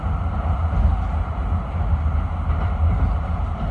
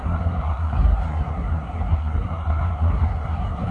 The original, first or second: first